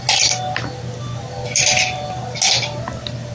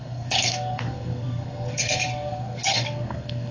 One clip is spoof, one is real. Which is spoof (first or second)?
second